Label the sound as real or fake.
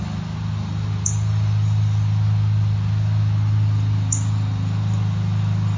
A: real